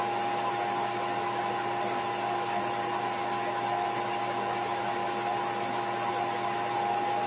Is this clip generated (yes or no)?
no